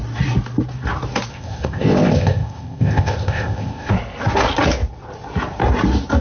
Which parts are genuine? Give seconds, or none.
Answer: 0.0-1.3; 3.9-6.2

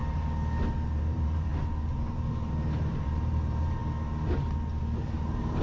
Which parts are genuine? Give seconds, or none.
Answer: 0.0-1.1; 1.5-2.1; 3.8-4.8

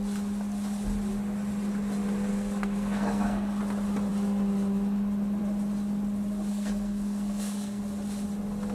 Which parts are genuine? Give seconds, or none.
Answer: 0.0-2.3; 3.6-6.5; 7.8-8.7

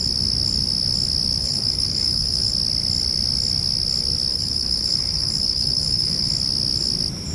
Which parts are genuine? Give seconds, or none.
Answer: 0.0-1.4; 2.5-4.3; 6.3-7.3